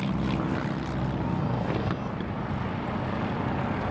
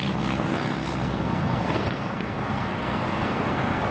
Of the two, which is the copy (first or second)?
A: second